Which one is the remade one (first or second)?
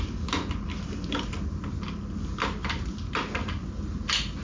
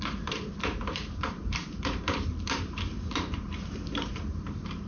second